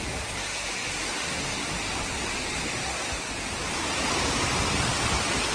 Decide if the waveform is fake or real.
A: real